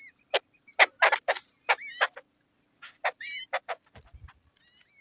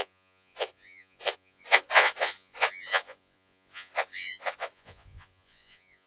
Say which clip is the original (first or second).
first